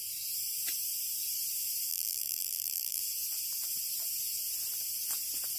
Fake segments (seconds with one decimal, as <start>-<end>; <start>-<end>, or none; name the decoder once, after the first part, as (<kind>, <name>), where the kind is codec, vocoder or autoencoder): 1.9-3.0 (vocoder, BigVGAN v2)